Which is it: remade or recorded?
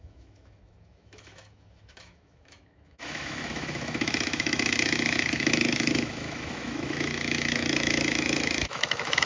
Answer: remade